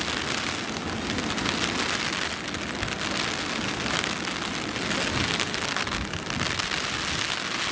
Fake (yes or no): no